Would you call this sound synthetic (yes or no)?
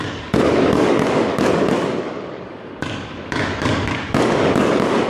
yes